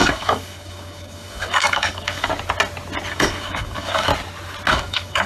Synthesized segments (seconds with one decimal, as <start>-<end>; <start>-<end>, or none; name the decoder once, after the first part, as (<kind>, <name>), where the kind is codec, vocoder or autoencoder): 0.0-2.3 (codec, DAC); 3.1-4.1; 4.7-5.3